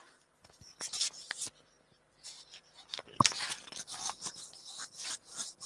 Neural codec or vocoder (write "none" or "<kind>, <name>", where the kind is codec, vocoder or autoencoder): none